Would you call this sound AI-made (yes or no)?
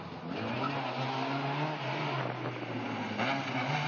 no